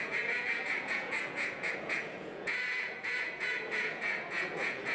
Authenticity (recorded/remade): remade